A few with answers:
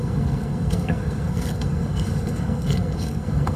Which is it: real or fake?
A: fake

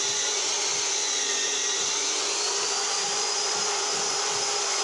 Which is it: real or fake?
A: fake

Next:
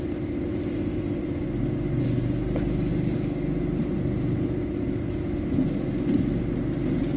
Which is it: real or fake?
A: real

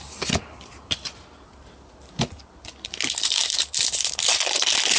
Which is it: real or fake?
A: real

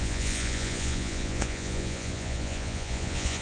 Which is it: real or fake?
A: fake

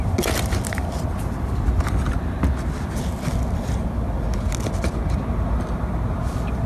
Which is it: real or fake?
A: real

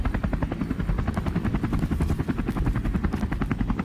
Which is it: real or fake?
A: fake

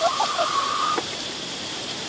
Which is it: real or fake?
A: fake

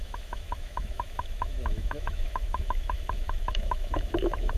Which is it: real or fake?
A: fake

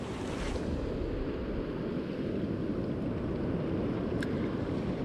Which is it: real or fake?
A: real